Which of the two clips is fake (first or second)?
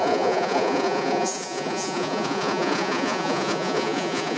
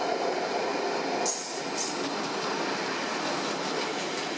first